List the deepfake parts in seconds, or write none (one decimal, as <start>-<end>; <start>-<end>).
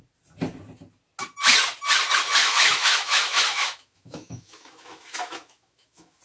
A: 2.4-6.2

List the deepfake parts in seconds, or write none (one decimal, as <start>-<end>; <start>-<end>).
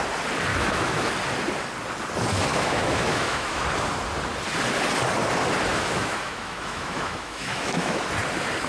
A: 0.5-1.1; 2.5-3.6; 5.7-8.0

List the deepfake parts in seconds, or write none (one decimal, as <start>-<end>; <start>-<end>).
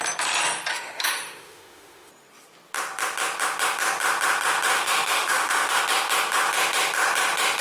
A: 0.7-2.1; 4.7-5.8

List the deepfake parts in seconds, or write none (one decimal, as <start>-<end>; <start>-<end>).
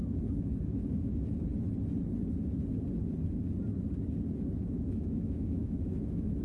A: 0.0-1.5; 4.7-6.4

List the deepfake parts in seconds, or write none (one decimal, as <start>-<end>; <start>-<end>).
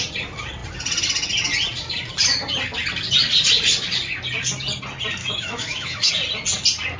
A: 5.2-6.1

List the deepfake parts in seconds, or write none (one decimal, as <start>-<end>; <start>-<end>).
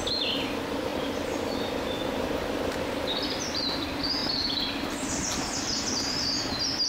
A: none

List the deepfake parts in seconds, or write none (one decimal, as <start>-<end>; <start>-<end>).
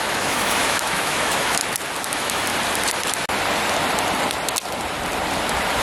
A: 0.0-1.6; 2.1-2.5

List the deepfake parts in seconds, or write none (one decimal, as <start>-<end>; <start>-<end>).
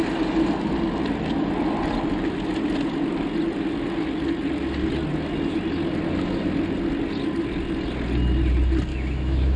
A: 8.9-9.6